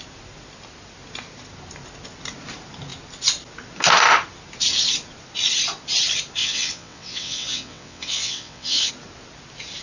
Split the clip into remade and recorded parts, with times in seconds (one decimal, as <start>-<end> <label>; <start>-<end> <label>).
0.0-6.4 recorded; 6.4-8.9 remade; 8.9-9.8 recorded